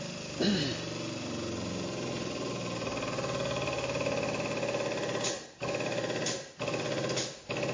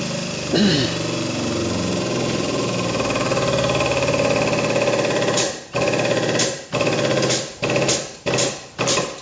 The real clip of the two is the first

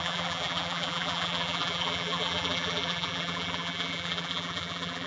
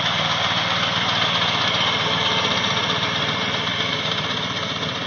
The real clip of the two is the second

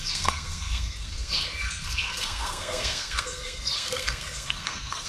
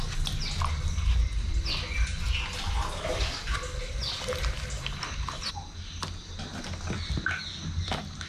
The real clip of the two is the second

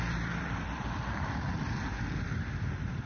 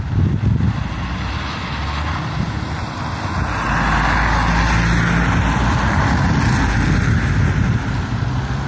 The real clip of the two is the second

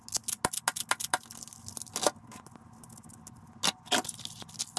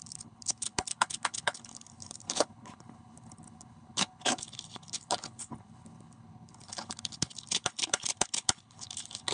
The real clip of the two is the first